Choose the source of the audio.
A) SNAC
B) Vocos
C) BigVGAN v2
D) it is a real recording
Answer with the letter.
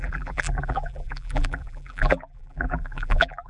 C